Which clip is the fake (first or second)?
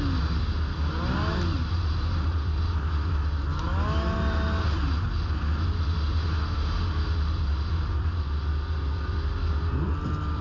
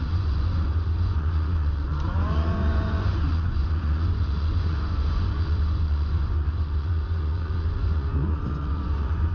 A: second